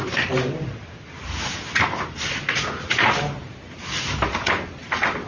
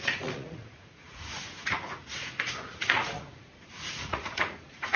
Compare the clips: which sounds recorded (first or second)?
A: first